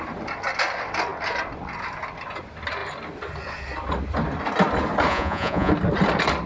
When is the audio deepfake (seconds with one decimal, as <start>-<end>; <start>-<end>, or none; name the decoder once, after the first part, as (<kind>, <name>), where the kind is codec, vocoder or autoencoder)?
5.1-5.7 (vocoder, Vocos)